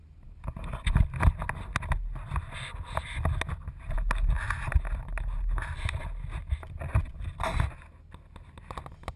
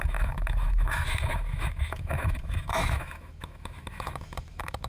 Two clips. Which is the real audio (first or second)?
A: first